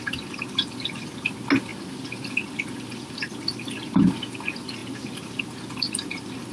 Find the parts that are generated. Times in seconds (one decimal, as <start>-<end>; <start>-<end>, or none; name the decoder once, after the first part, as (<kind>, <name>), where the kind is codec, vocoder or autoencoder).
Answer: none